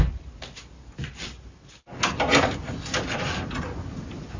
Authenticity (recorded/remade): recorded